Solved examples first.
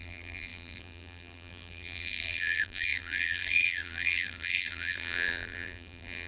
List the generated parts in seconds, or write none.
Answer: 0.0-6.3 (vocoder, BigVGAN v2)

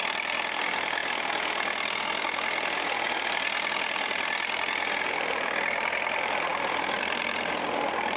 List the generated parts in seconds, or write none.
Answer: 0.0-1.0 (vocoder, BigVGAN v2); 5.1-6.5; 7.0-8.2

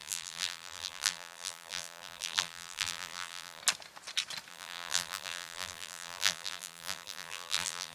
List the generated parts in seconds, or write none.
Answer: 0.0-3.6 (vocoder, BigVGAN v2); 4.5-7.9

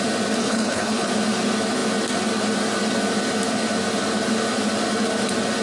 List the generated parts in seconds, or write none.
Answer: 0.4-1.1 (codec, HILCodec)